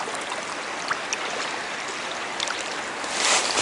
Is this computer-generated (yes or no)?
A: no